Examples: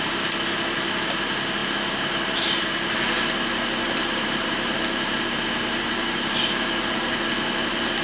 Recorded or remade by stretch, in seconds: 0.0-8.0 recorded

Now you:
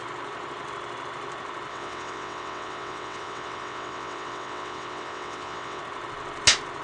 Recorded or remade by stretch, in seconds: 0.0-1.7 recorded; 1.7-5.8 remade; 5.8-6.8 recorded

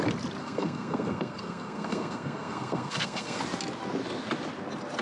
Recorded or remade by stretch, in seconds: 0.0-0.4 recorded; 0.4-3.4 remade; 3.4-5.0 recorded